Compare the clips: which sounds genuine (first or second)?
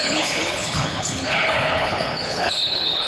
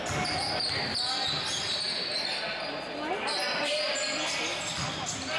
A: second